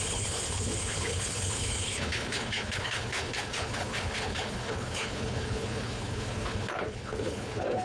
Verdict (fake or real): fake